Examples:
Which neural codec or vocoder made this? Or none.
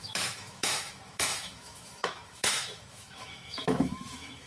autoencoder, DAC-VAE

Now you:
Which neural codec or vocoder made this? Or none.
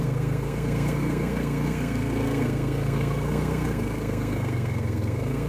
codec, SNAC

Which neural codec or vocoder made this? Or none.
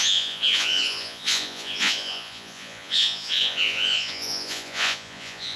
vocoder, Vocos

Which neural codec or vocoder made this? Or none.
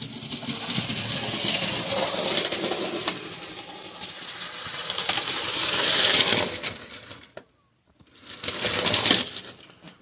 none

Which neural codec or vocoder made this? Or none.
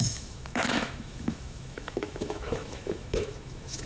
autoencoder, DAC-VAE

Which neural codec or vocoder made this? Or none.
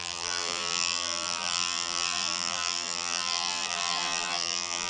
vocoder, BigVGAN v2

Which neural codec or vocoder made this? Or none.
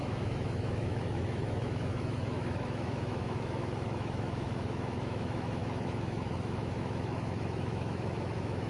autoencoder, DAC-VAE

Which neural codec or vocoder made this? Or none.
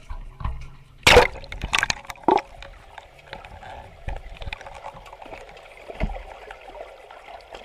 none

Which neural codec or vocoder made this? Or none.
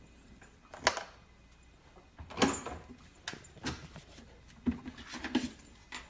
none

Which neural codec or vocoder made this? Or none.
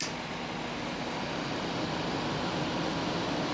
none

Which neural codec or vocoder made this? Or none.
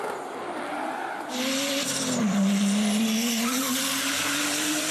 vocoder, BigVGAN v2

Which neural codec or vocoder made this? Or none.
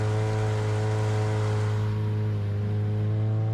none